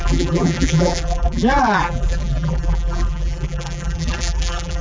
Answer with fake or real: fake